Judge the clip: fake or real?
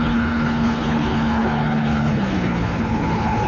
fake